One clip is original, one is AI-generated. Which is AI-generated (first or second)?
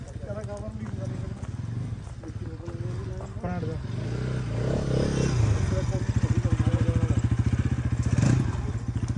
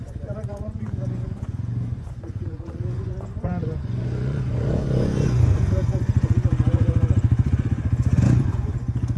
second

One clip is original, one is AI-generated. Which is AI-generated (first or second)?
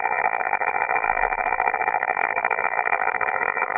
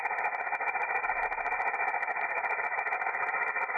first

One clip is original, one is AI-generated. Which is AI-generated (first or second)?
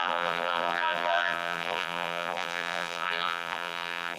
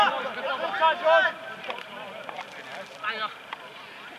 first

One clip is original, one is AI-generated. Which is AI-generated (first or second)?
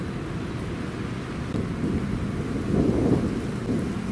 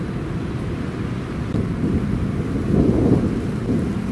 second